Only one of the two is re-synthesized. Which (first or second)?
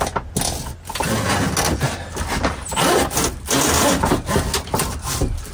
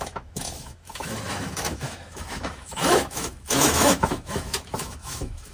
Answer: second